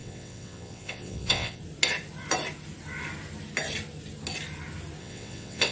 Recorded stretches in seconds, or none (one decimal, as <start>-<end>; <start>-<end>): 1.6-5.0